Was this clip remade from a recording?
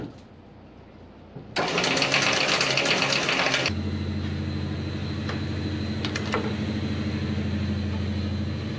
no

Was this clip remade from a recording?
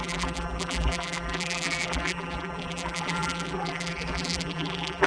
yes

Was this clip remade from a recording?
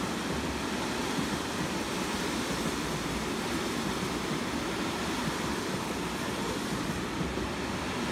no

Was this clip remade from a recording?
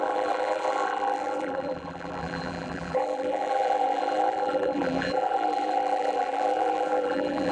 yes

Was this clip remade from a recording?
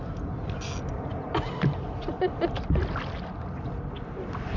no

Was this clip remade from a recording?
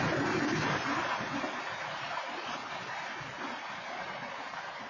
yes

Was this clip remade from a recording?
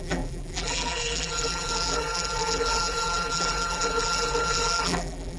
yes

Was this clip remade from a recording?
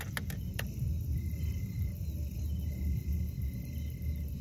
no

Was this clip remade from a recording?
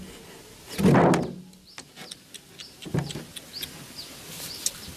no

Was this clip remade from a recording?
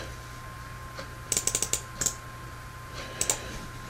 no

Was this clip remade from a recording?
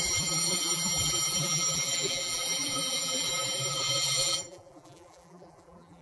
yes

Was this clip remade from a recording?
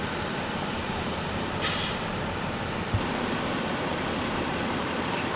yes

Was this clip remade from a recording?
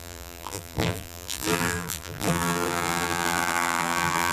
yes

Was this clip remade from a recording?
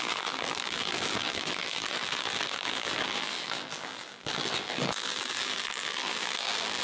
yes